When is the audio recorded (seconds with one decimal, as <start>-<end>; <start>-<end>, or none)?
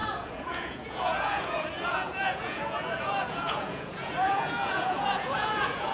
none